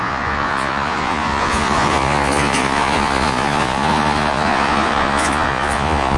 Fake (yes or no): yes